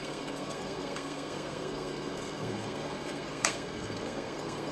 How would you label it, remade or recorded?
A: remade